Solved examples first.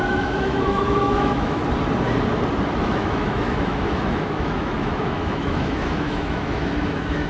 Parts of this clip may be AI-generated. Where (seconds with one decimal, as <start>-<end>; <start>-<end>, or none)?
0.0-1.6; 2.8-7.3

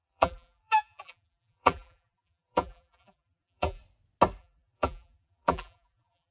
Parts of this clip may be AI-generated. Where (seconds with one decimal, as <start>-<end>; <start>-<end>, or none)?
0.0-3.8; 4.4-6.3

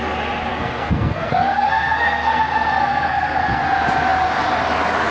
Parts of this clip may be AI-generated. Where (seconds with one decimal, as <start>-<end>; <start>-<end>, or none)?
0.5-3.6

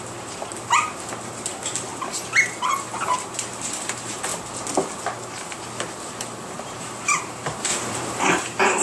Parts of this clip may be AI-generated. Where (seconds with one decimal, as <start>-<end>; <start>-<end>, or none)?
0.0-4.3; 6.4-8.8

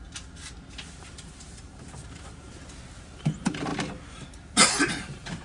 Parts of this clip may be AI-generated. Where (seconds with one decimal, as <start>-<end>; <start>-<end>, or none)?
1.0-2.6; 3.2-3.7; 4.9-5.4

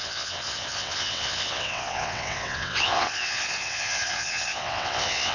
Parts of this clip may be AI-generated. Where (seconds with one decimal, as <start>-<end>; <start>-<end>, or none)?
0.0-5.3

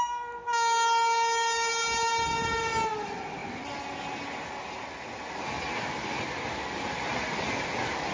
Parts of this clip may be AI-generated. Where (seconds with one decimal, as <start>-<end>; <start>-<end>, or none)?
none

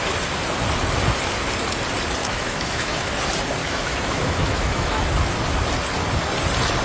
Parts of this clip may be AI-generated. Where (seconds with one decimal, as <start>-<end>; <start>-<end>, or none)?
2.2-3.2; 3.6-5.0